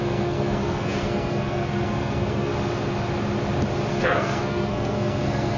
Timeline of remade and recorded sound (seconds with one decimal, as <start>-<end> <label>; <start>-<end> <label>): 0.0-2.5 remade; 2.5-3.9 recorded; 3.9-5.6 remade